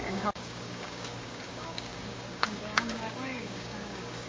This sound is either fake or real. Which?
fake